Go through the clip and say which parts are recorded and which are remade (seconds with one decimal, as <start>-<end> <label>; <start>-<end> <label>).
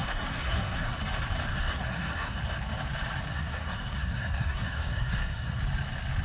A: 0.0-1.0 remade; 1.0-1.5 recorded; 1.5-2.4 remade; 2.4-3.3 recorded; 3.3-5.6 remade; 5.6-6.2 recorded